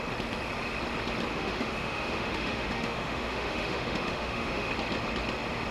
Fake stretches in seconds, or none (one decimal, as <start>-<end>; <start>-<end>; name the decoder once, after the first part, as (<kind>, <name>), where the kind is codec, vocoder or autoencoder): 1.3-4.7 (autoencoder, DAC-VAE)